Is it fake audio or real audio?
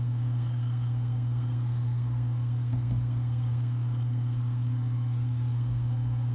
fake